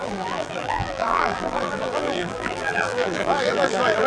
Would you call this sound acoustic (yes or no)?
no